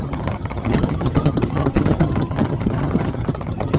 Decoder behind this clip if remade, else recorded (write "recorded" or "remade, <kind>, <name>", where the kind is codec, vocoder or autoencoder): remade, vocoder, HiFi-GAN